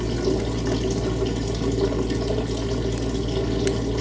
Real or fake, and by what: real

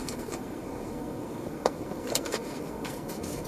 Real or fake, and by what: fake, codec, SNAC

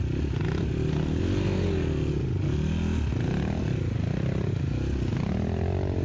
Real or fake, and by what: real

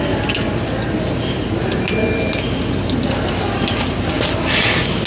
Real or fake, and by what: real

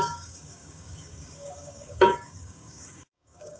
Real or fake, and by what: fake, codec, DAC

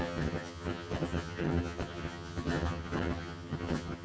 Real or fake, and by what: fake, vocoder, HiFi-GAN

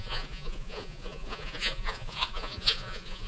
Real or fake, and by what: fake, vocoder, Vocos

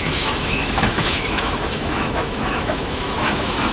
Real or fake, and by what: fake, autoencoder, DAC-VAE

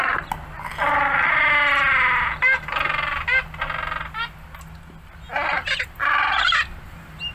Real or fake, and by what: real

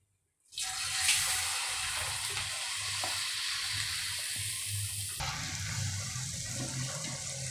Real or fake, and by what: real